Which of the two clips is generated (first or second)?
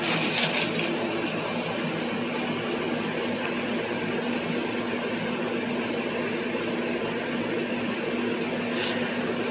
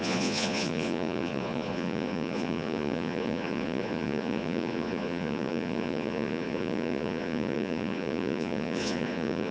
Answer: second